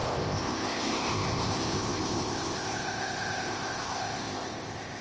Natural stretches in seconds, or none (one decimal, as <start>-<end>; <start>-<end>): none